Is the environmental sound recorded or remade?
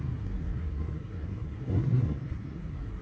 remade